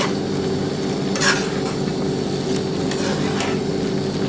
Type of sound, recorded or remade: recorded